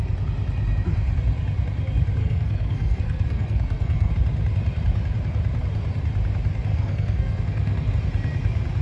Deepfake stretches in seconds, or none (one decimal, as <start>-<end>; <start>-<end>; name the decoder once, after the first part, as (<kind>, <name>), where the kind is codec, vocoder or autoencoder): 2.2-4.1 (codec, SNAC); 6.7-7.9